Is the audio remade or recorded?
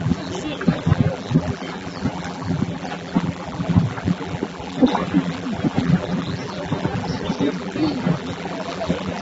remade